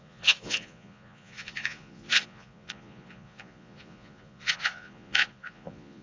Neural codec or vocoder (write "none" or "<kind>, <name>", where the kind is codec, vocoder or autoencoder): vocoder, Vocos